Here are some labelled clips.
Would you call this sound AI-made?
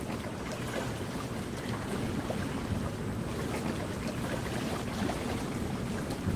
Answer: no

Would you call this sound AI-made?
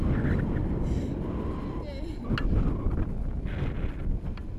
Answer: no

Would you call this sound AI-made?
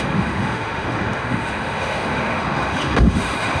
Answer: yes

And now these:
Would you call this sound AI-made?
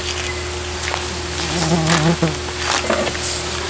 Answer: no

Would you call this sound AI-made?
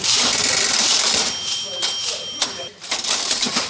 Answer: yes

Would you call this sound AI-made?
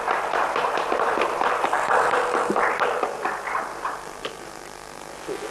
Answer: yes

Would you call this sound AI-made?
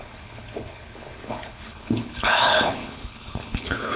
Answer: yes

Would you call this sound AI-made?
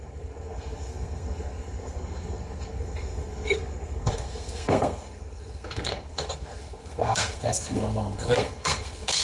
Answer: yes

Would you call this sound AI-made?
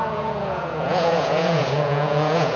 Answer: yes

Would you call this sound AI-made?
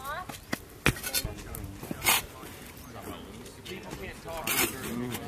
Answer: no